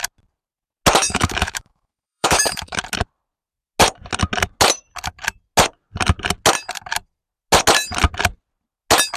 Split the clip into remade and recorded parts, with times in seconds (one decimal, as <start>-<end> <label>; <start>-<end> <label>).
0.0-1.0 recorded; 1.0-2.8 remade; 2.8-9.2 recorded